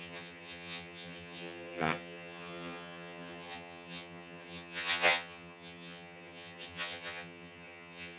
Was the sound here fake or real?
fake